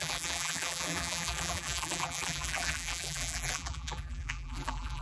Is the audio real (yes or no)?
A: no